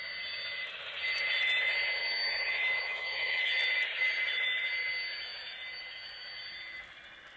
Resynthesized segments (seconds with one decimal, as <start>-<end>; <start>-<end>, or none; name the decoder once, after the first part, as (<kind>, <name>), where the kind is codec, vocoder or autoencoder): 2.0-3.5 (autoencoder, DAC-VAE)